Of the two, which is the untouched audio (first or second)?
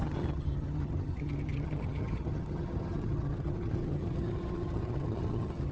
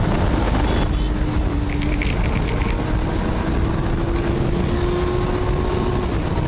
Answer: second